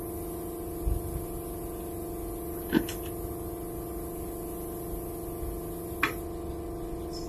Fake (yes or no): no